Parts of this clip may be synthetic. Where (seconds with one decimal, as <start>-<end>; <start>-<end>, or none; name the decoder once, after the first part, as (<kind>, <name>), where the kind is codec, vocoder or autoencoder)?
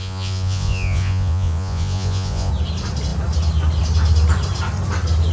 0.0-2.5 (vocoder, Vocos)